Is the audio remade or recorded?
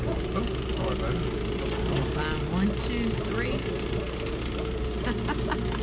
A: recorded